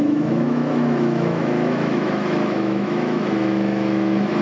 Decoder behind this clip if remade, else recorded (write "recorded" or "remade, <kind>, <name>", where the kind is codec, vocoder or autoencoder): remade, autoencoder, DAC-VAE